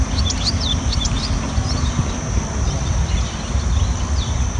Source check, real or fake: real